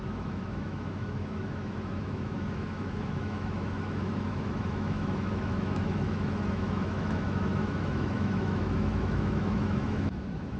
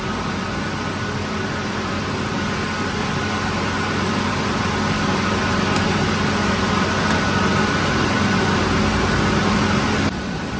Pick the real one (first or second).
second